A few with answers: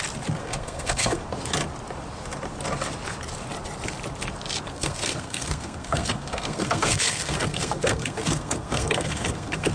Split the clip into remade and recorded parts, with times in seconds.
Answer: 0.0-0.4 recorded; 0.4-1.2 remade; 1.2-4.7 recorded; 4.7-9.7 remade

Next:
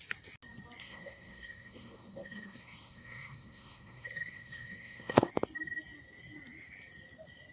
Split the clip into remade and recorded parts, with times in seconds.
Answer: 0.0-0.8 recorded; 0.8-5.3 remade; 5.3-7.5 recorded

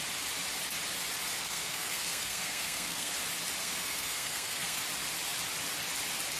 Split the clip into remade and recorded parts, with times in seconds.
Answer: 0.0-1.3 recorded; 1.3-3.1 remade; 3.1-3.6 recorded; 3.6-4.8 remade; 4.8-6.4 recorded

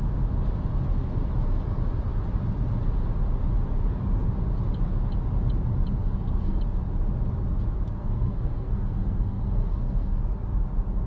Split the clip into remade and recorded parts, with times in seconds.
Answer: 0.0-6.0 recorded; 6.0-6.6 remade; 6.6-8.0 recorded; 8.0-10.2 remade; 10.2-11.1 recorded

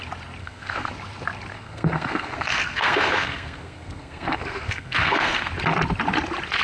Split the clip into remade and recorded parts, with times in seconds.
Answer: 0.0-0.4 recorded; 0.4-0.9 remade; 0.9-1.5 recorded; 1.5-5.5 remade; 5.5-6.6 recorded